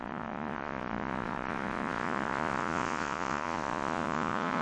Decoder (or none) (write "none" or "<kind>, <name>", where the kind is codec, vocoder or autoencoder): vocoder, Vocos